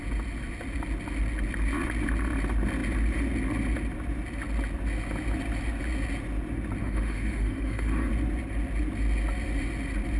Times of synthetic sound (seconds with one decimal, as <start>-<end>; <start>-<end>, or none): 6.8-8.1